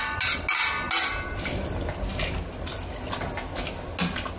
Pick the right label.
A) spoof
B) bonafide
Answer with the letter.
B